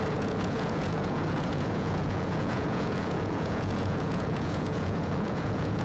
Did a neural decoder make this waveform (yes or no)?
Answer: yes